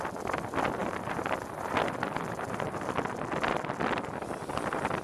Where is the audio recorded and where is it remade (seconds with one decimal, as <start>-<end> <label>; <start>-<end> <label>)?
0.0-5.0 recorded